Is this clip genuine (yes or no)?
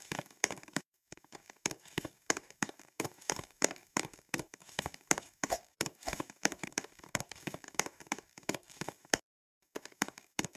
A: no